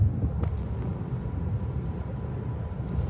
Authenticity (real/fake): real